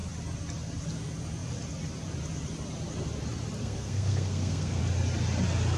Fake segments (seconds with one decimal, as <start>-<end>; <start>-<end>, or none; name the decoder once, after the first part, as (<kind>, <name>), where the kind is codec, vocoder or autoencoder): 3.6-4.8 (codec, SNAC)